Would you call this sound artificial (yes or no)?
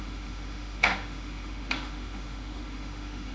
yes